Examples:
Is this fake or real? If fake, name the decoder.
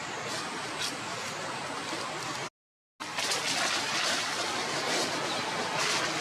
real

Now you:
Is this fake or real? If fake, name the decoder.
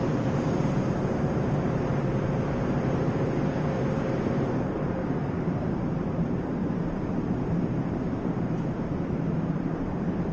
fake, vocoder, BigVGAN v2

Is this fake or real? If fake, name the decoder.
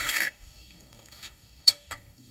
fake, codec, DAC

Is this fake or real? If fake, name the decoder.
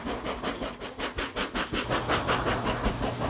real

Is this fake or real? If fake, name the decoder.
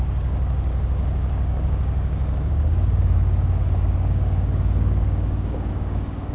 fake, codec, DAC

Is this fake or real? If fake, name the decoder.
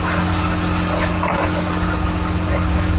real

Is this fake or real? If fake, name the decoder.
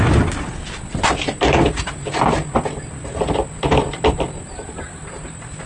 real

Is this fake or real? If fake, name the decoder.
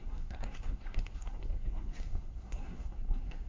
fake, codec, SNAC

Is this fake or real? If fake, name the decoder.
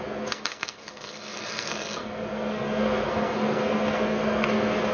fake, codec, SNAC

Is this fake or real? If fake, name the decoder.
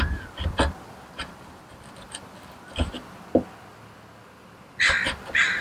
real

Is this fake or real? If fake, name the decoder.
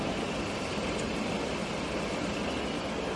real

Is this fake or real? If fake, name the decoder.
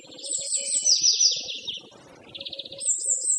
real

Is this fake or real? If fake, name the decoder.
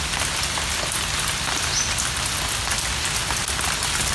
real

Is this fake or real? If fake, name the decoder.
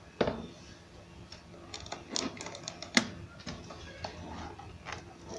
real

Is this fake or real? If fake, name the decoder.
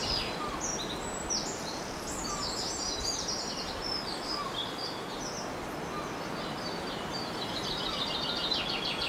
real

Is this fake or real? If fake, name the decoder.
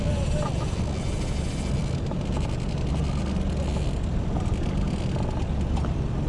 real